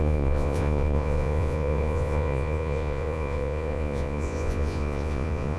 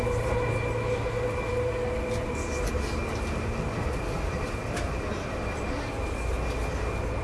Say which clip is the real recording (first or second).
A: second